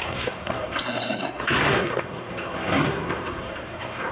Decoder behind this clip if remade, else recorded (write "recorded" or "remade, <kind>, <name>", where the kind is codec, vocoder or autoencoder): remade, codec, SNAC